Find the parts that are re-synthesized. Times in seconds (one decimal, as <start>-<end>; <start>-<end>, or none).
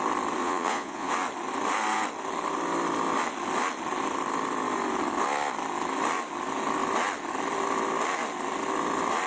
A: 0.4-1.1